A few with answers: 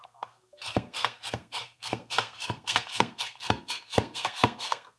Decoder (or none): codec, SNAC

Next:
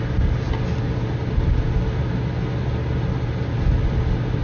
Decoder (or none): none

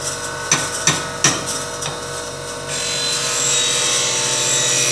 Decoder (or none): none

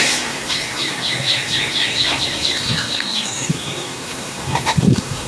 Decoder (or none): codec, SNAC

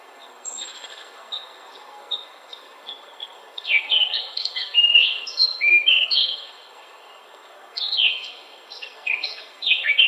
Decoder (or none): codec, SNAC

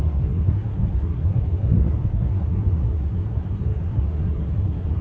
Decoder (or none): codec, SNAC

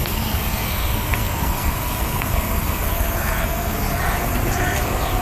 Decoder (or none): codec, SNAC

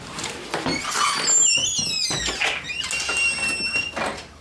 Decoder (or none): none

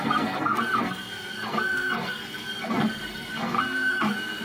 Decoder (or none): codec, SNAC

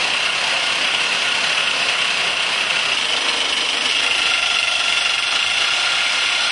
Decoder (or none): none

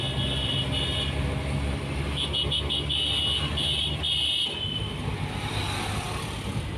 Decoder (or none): none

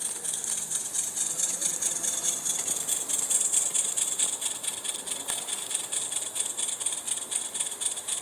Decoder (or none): none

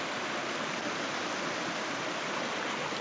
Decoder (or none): none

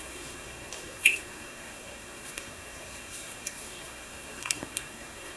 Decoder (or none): codec, SNAC